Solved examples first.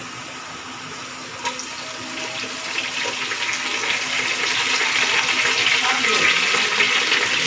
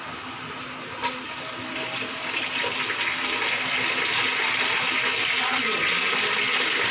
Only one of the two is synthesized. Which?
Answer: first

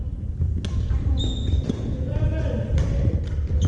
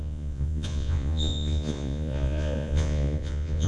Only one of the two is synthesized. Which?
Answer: second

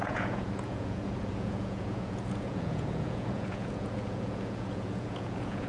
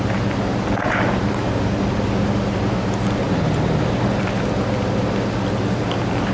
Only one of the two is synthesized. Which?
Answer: first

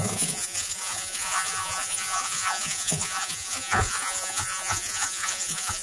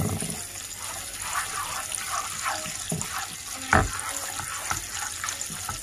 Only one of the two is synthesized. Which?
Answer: first